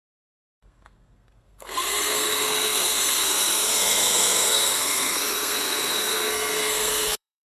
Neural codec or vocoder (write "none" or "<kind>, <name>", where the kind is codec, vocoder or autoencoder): codec, SNAC